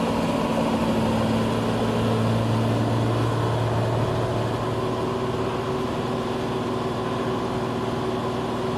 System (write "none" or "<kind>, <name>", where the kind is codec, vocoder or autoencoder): none